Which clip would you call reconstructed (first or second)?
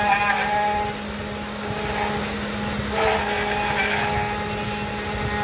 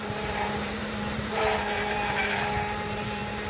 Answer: second